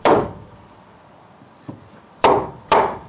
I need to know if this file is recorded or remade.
remade